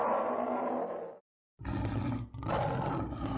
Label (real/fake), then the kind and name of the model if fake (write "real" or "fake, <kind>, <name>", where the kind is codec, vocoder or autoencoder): real